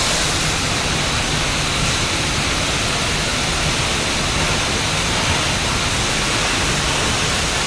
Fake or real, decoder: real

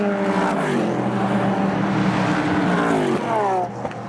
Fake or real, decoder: real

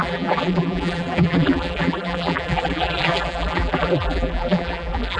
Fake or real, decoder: fake, vocoder, BigVGAN v2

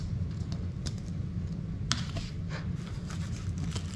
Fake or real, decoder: real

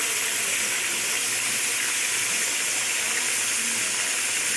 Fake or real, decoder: real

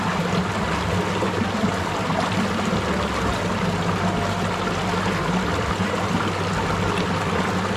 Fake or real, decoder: real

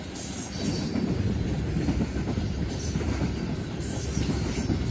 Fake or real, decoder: real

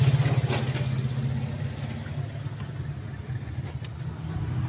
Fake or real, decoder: real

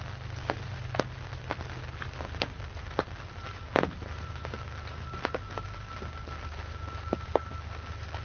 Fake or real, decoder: real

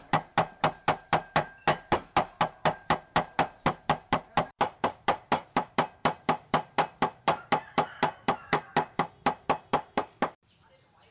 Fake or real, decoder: fake, vocoder, BigVGAN v2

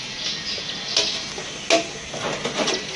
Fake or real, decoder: real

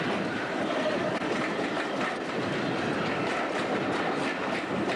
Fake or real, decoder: real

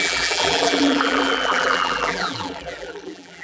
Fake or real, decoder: fake, vocoder, BigVGAN v2